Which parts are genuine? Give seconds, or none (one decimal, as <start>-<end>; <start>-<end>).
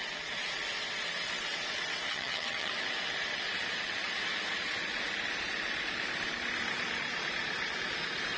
0.0-2.1; 2.7-8.4